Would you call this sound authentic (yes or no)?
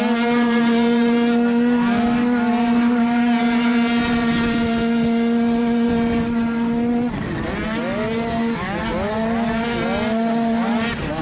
yes